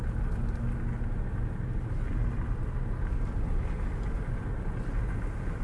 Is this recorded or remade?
recorded